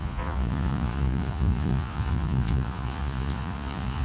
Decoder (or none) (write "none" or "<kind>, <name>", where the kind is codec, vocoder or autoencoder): vocoder, Vocos